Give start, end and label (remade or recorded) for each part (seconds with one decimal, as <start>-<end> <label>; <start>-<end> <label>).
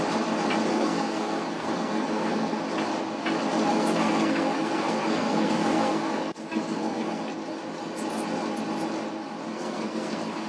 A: 0.0-0.7 recorded; 0.7-2.6 remade; 2.6-3.7 recorded; 3.7-7.2 remade; 7.2-9.5 recorded; 9.5-10.5 remade